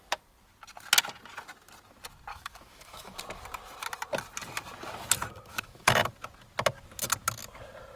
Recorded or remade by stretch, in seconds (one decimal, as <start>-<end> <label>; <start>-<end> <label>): 0.0-2.3 recorded; 2.3-3.2 remade; 3.2-5.5 recorded; 5.5-6.1 remade; 6.1-8.0 recorded